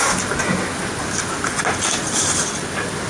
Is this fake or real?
real